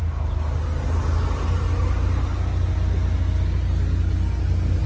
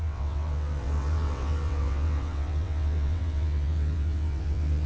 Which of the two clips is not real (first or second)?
second